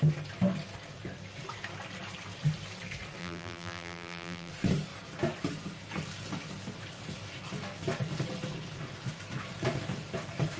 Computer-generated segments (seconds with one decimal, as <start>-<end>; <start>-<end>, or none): 3.2-4.5